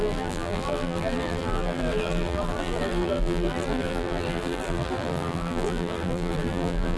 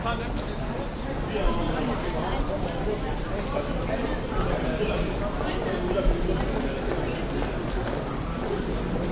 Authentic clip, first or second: second